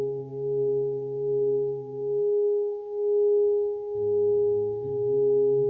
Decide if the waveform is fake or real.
real